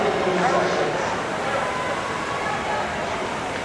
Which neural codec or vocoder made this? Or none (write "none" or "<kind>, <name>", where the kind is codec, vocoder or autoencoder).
none